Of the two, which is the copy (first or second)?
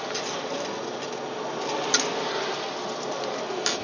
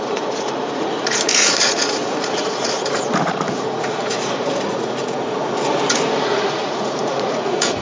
second